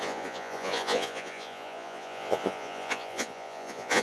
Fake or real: fake